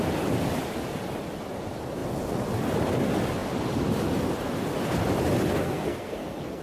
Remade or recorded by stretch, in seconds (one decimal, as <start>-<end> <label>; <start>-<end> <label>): 0.0-5.5 recorded; 5.5-6.6 remade